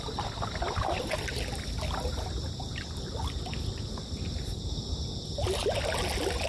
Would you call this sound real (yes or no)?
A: yes